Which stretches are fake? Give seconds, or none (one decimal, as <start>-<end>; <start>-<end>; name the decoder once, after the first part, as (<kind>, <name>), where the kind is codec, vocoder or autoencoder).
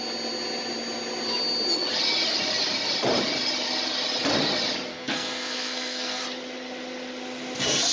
4.9-6.2 (codec, SNAC)